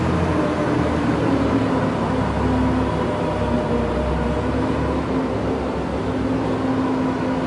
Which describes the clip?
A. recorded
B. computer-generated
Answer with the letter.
A